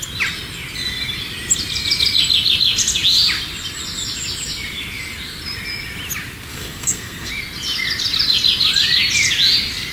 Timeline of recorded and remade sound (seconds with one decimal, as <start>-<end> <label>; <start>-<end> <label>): 0.0-6.5 recorded; 6.5-7.3 remade; 7.3-9.9 recorded